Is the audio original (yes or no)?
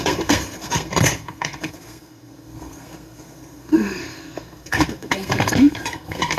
no